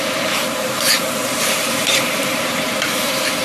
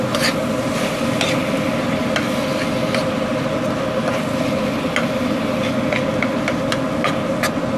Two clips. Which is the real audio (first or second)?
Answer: second